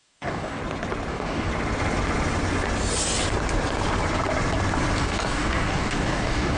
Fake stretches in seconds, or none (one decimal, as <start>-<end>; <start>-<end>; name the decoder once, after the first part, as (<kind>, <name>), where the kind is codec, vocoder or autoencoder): 0.0-0.6 (codec, DAC); 1.1-1.5; 5.0-6.6